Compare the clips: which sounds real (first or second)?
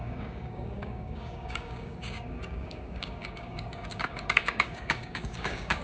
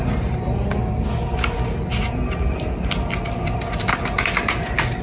second